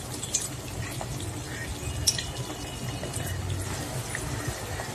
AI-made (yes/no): no